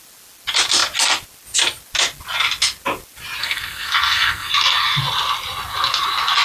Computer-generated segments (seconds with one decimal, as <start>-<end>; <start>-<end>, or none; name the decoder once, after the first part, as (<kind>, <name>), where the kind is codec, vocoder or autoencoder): 3.4-4.5 (codec, SNAC)